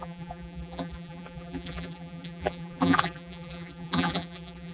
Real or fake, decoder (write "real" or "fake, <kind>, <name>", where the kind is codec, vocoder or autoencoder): fake, vocoder, BigVGAN v2